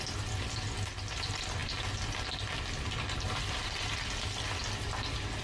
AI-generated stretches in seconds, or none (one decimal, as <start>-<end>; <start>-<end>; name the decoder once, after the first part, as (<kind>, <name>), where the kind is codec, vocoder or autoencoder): none